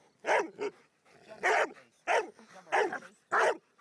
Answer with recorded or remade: recorded